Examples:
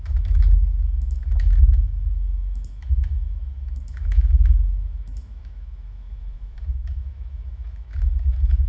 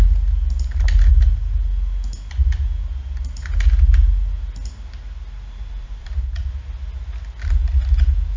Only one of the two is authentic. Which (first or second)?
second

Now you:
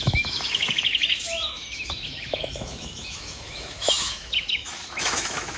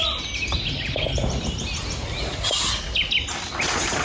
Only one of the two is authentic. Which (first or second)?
second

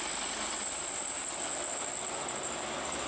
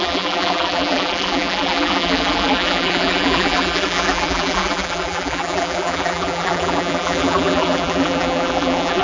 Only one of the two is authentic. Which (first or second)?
first